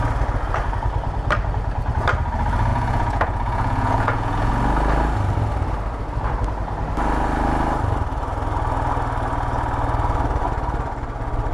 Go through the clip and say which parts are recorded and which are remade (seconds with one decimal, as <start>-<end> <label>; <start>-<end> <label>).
0.0-2.7 recorded; 2.7-4.5 remade; 4.5-11.5 recorded